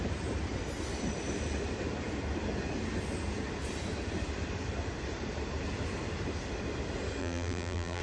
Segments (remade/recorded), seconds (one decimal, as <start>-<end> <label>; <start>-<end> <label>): 0.0-7.2 recorded; 7.2-8.0 remade